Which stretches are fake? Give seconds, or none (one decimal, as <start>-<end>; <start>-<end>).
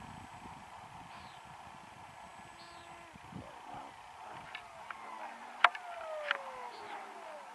none